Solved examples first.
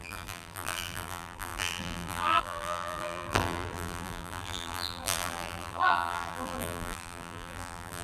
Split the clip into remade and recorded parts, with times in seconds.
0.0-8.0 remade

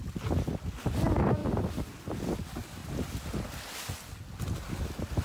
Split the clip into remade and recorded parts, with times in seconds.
0.0-1.4 recorded; 1.4-2.0 remade; 2.0-2.8 recorded; 2.8-3.9 remade; 3.9-5.2 recorded